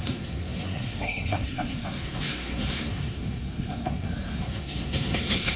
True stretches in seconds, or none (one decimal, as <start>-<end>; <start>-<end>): none